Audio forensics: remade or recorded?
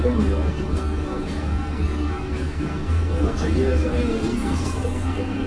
remade